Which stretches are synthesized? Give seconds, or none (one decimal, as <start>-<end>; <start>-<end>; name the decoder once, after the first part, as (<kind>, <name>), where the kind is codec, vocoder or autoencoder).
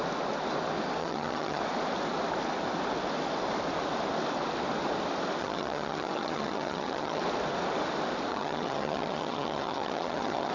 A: 1.0-1.6 (vocoder, HiFi-GAN); 5.4-7.2; 8.3-10.5